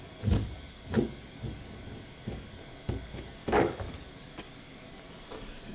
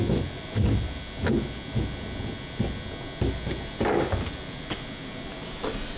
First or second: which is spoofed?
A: first